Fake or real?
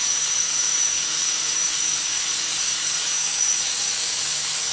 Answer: fake